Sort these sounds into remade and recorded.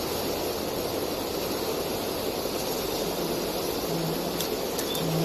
recorded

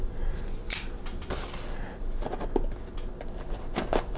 recorded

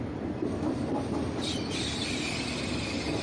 recorded